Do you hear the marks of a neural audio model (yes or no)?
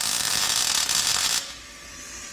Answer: yes